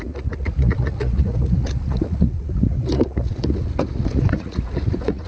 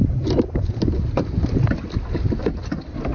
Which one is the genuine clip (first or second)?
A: second